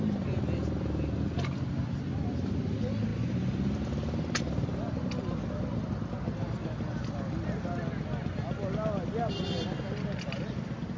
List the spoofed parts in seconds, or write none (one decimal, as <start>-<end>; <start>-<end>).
none